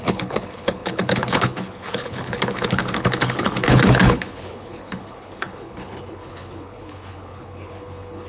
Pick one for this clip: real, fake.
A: fake